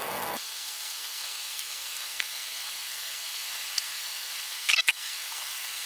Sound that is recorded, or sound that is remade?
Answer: remade